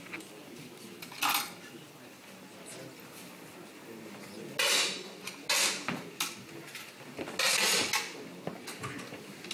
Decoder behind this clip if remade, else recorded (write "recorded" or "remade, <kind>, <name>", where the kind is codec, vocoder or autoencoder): recorded